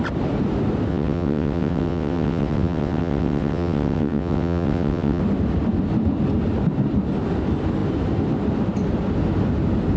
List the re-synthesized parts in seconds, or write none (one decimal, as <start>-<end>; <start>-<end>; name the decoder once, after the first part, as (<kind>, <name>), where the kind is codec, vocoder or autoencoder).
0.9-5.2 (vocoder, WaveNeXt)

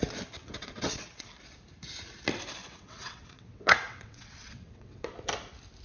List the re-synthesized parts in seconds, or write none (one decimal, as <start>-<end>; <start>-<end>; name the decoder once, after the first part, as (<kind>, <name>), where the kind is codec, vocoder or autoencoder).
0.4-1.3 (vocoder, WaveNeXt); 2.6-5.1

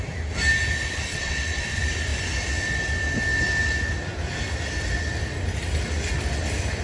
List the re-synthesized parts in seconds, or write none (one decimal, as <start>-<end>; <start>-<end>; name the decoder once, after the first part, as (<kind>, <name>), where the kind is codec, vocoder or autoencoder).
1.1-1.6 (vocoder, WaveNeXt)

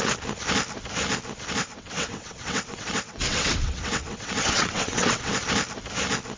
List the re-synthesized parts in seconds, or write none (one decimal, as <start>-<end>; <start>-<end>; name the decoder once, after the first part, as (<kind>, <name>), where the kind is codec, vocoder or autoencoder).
1.6-5.3 (vocoder, WaveNeXt)

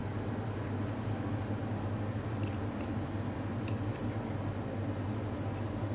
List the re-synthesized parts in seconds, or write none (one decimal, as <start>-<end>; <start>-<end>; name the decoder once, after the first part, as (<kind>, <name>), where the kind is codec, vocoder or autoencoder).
none

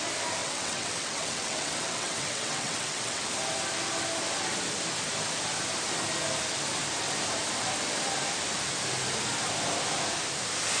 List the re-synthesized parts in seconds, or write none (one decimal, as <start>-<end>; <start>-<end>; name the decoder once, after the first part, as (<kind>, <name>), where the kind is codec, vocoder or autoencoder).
0.4-3.2 (vocoder, WaveNeXt)

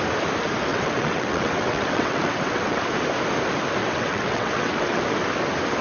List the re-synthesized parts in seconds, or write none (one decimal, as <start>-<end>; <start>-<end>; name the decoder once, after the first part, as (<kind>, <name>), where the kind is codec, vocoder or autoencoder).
0.7-2.8 (vocoder, WaveNeXt); 3.8-5.0

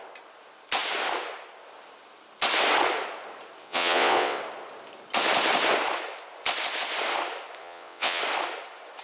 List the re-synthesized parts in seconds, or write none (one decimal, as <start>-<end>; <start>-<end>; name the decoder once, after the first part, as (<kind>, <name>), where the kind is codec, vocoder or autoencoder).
3.6-4.4 (vocoder, WaveNeXt); 7.6-8.2